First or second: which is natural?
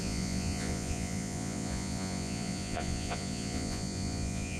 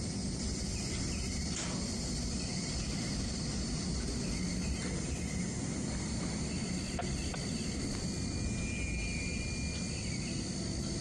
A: second